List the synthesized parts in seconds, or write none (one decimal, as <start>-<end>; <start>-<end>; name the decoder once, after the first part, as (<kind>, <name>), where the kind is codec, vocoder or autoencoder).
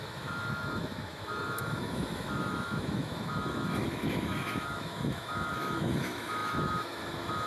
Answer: 0.0-7.5 (autoencoder, DAC-VAE)